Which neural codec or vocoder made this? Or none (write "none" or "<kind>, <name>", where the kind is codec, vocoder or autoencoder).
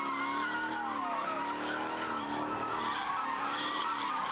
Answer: none